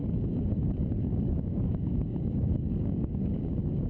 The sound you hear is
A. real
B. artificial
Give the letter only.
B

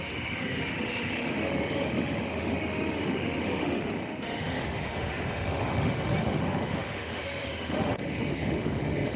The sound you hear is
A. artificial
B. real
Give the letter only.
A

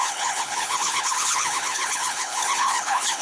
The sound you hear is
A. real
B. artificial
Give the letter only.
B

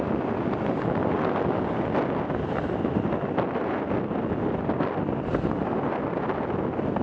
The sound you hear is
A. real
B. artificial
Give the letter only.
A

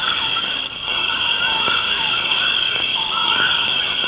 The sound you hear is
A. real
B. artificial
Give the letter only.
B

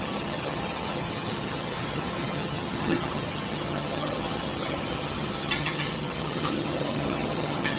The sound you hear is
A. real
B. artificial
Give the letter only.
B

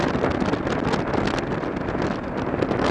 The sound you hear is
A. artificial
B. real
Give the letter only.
B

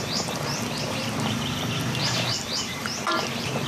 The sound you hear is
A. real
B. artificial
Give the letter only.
B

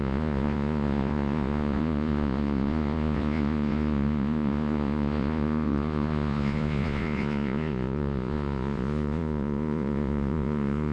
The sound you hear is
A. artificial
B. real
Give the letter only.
A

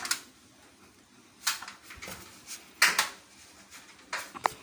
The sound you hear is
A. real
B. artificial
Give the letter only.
A